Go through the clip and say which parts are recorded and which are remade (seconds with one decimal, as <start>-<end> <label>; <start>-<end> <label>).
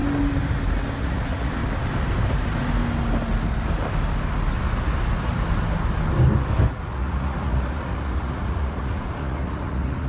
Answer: 0.0-1.0 recorded; 1.0-1.6 remade; 1.6-6.7 recorded; 6.7-10.1 remade